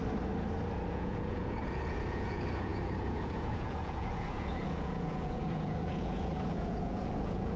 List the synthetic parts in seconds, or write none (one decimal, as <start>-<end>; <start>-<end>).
0.9-7.6

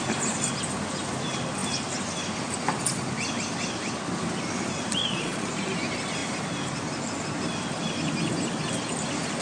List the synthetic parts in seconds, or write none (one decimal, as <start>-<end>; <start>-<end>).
5.0-5.5

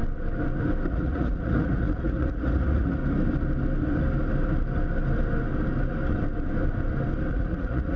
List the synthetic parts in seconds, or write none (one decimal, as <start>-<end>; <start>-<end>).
0.9-3.0; 7.3-8.0

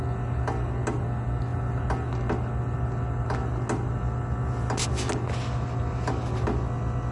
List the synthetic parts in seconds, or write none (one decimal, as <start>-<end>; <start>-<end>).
none

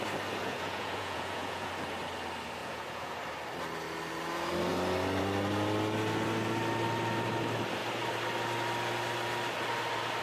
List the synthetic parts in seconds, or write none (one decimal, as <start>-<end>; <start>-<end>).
0.4-1.7; 2.6-3.2

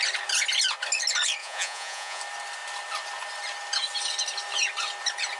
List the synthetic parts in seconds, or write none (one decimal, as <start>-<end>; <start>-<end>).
1.4-2.2

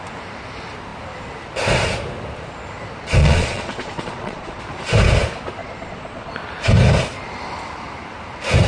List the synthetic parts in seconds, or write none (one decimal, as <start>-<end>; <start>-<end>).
3.2-4.6; 5.6-6.3

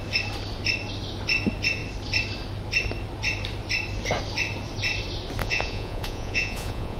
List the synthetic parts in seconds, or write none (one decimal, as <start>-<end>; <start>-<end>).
5.4-7.0